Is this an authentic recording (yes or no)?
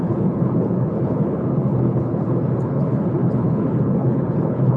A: no